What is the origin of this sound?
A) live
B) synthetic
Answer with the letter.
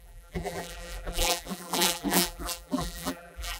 B